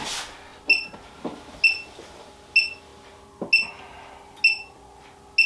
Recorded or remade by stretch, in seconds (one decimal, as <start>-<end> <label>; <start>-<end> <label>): 0.0-5.5 recorded